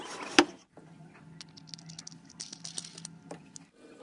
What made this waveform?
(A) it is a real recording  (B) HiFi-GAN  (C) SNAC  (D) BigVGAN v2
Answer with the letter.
A